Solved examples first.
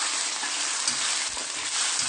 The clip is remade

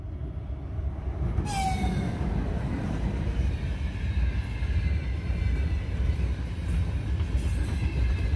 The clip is recorded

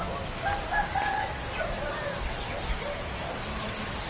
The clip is recorded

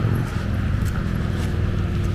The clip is recorded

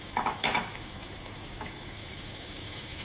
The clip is remade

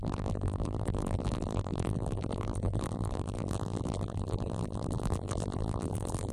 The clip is remade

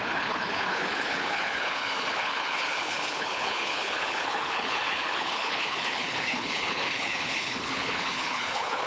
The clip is remade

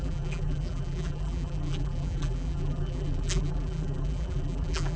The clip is remade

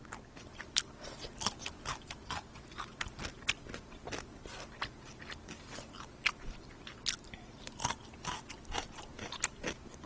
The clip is recorded